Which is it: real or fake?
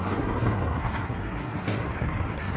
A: fake